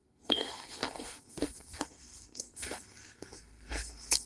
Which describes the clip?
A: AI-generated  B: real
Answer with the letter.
A